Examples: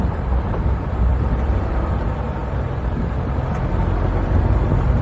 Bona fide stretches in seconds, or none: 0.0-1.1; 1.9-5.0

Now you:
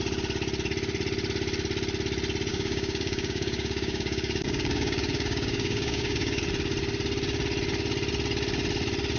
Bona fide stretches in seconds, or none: 0.0-2.5; 6.4-9.2

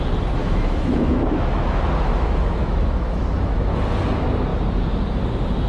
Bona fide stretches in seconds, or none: 0.0-0.4; 3.8-5.7

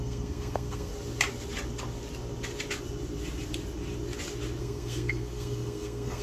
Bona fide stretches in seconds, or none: 0.9-4.6

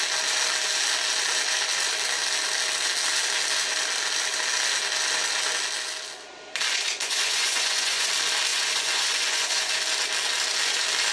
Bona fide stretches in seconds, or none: 0.0-6.7; 8.1-8.5; 9.7-11.1

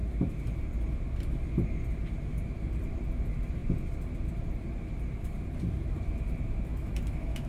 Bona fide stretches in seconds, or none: 0.0-6.7